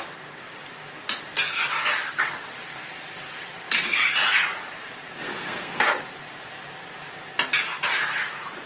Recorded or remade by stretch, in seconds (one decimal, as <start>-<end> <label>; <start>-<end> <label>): 0.0-5.2 recorded; 5.2-5.8 remade; 5.8-8.7 recorded